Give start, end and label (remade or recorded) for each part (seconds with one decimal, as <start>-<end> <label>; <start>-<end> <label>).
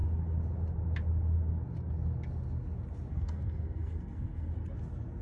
0.0-3.1 recorded; 3.1-4.5 remade; 4.5-5.2 recorded